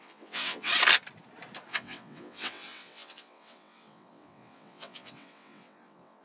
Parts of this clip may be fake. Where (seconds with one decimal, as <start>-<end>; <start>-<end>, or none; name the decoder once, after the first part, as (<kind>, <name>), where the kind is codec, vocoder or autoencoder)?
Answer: 0.0-0.7 (vocoder, WaveNeXt); 1.7-6.2